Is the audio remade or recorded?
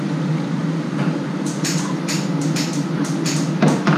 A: recorded